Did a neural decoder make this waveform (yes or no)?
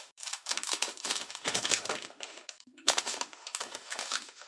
yes